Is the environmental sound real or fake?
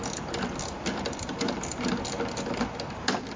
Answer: real